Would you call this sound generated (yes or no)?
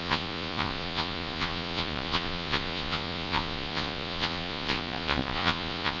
yes